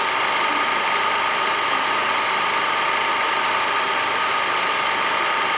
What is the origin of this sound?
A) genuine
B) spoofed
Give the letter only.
A